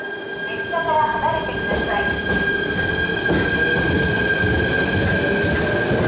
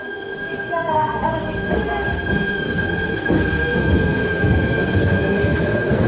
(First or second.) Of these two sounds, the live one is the first